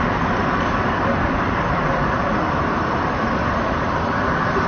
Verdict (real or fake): real